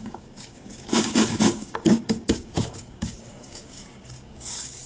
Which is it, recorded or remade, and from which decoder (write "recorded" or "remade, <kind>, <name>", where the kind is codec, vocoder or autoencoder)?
remade, codec, DAC